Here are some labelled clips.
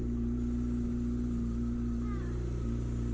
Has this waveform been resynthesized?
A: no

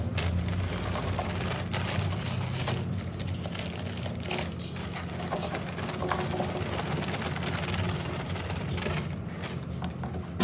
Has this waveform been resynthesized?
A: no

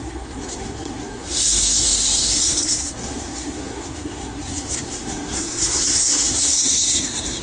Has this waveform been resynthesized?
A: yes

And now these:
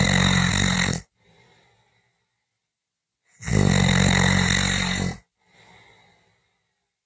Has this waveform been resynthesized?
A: no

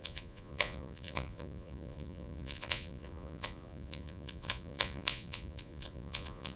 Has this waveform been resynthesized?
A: yes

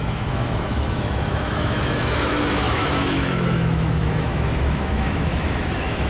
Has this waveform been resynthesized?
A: yes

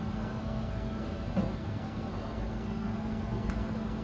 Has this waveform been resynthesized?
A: yes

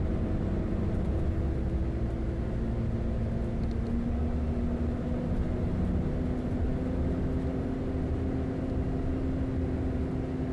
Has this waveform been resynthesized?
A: no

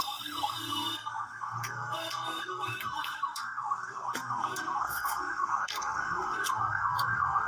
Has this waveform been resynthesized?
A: yes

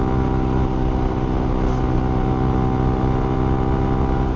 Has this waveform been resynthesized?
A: no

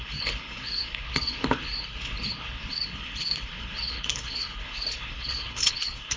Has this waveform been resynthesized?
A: yes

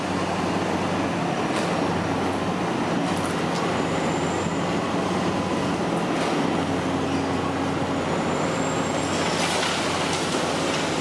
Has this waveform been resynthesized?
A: no